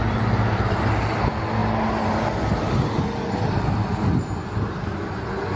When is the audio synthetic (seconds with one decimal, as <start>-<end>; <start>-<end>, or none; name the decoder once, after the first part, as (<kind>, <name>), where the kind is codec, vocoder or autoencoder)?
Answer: none